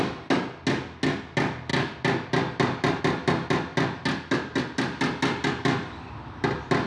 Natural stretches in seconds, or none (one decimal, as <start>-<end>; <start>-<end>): 0.0-6.9